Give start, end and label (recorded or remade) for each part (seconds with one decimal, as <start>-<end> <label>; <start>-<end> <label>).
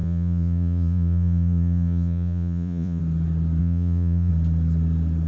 0.0-3.0 remade; 3.0-3.6 recorded; 3.6-4.3 remade; 4.3-5.3 recorded